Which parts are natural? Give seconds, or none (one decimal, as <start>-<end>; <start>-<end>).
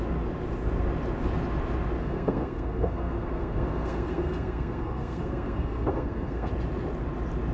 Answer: 0.0-2.0; 6.5-7.5